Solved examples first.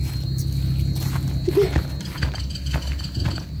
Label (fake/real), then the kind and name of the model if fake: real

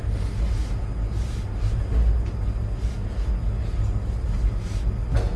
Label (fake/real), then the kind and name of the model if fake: real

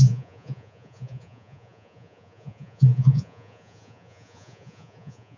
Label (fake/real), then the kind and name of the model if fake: fake, vocoder, Vocos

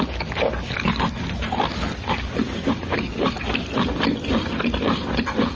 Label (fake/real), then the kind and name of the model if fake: real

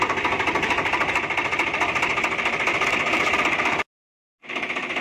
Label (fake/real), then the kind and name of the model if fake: real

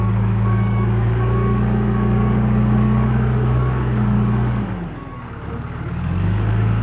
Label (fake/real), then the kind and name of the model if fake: fake, codec, DAC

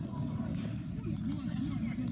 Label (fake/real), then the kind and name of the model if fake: real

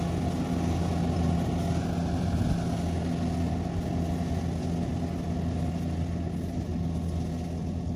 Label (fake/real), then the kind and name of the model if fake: real